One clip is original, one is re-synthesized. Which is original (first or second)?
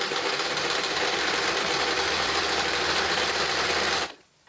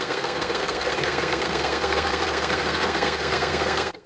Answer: first